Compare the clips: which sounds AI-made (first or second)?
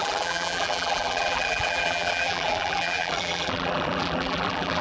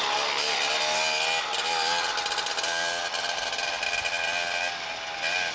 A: first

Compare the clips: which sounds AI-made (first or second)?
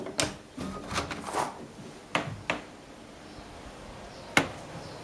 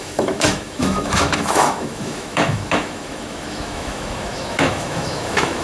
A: second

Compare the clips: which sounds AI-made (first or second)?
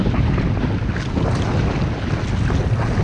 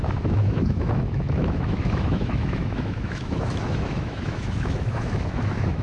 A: second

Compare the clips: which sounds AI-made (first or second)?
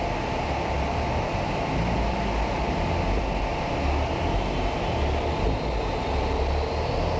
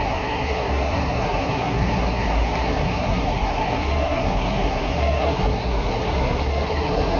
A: second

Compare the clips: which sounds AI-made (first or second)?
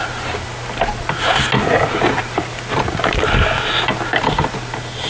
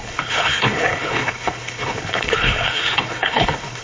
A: second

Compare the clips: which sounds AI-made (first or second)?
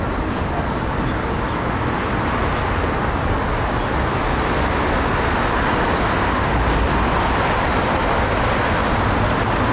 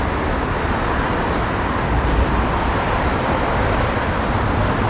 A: second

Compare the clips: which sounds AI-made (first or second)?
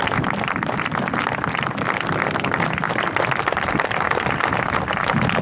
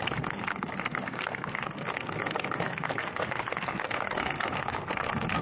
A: second